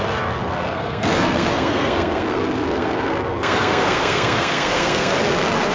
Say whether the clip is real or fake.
fake